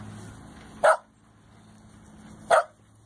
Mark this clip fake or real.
real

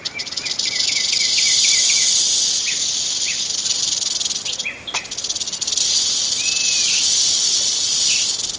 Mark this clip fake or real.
real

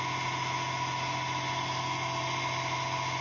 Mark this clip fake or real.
real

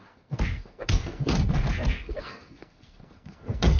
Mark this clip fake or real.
fake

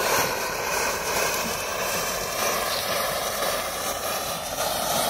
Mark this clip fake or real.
fake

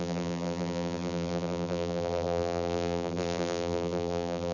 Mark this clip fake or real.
fake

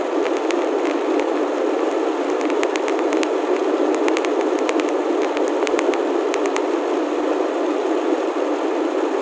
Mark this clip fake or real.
real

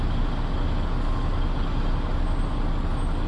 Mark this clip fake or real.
real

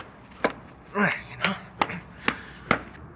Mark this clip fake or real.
real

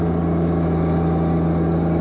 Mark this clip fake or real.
real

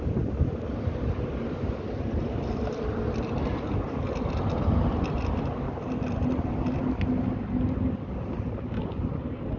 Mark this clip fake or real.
real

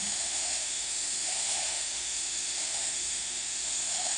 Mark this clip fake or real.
fake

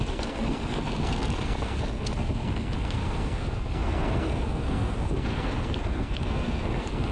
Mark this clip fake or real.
fake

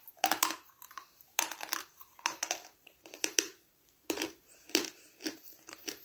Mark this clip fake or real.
fake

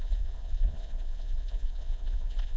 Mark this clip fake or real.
fake